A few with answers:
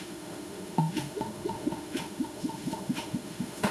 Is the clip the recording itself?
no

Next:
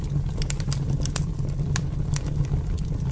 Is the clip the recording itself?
yes